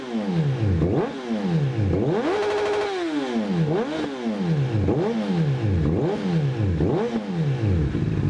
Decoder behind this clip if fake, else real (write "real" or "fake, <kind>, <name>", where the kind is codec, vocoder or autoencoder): real